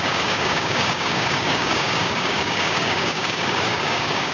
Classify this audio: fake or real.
fake